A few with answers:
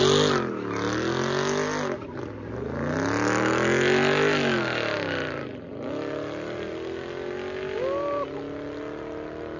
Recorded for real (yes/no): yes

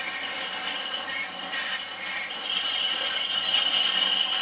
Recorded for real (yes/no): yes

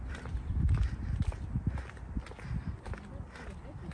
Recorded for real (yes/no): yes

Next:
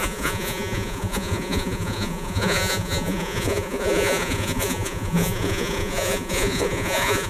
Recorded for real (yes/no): no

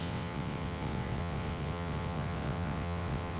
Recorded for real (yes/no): no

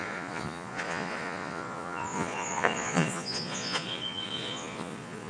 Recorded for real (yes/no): no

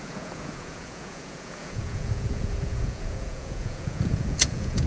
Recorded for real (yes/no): no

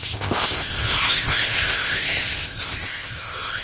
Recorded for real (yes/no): no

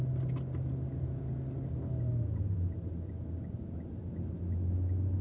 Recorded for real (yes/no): yes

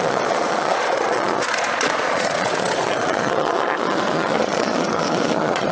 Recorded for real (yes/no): no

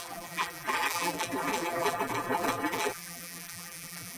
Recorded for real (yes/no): no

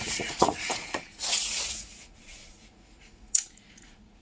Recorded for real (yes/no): no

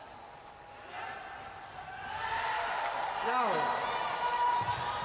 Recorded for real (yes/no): yes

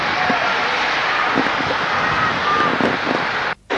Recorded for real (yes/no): yes